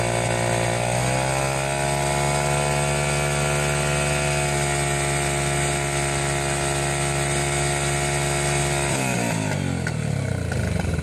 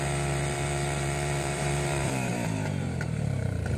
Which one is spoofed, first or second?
second